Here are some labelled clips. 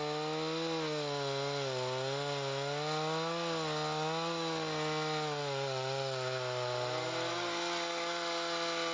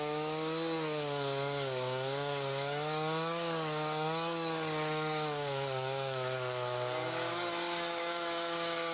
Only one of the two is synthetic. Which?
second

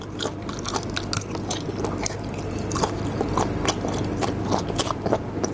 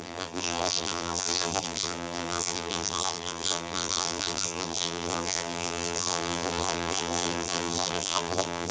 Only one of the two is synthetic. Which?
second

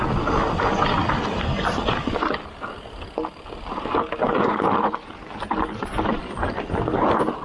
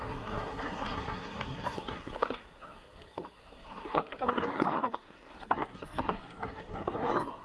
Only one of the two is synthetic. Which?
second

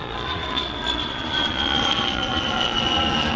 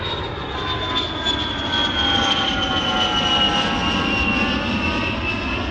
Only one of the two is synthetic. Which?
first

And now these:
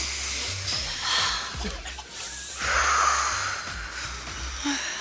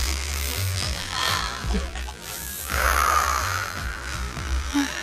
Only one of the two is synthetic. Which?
second